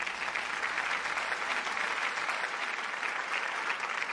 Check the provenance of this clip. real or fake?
real